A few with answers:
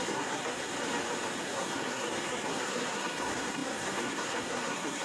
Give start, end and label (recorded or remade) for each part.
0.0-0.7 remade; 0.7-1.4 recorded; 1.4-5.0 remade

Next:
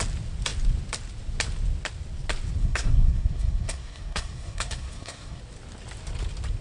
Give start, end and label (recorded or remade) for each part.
0.0-2.6 recorded; 2.6-5.4 remade; 5.4-6.6 recorded

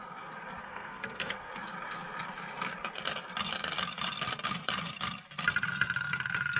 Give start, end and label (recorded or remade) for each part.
0.0-0.6 recorded; 0.6-1.5 remade; 1.5-6.6 recorded

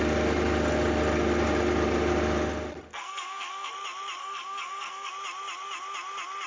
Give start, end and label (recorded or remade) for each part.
0.0-2.9 recorded; 2.9-3.7 remade; 3.7-4.2 recorded; 4.2-5.1 remade; 5.1-6.5 recorded

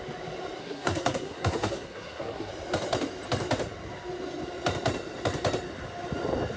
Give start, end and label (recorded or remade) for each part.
0.0-0.6 recorded; 0.6-2.5 remade; 2.5-6.6 recorded

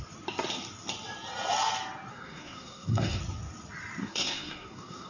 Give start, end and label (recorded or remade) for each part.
0.0-2.1 recorded; 2.1-3.2 remade; 3.2-4.0 recorded; 4.0-5.1 remade

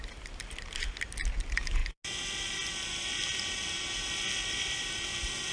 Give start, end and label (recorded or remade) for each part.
0.0-5.5 recorded